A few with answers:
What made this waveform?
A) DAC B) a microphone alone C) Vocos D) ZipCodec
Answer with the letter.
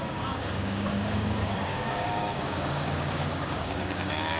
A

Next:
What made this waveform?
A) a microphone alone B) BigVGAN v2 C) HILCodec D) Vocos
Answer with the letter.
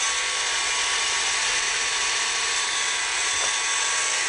A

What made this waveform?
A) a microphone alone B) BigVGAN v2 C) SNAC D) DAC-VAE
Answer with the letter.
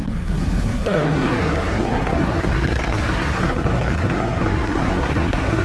C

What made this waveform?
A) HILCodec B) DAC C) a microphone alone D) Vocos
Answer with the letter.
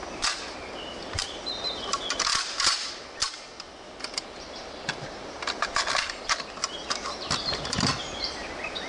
C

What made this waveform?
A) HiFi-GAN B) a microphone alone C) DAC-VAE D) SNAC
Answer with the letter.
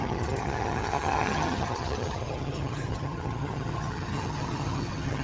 A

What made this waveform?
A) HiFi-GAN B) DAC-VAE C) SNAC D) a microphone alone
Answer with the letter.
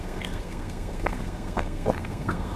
C